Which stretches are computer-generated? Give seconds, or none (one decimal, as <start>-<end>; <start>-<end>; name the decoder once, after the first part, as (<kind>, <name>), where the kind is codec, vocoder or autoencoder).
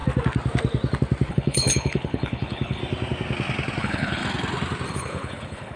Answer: 1.3-2.8 (codec, HILCodec); 3.8-4.2; 4.9-5.8